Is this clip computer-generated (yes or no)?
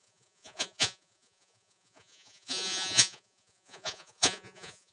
yes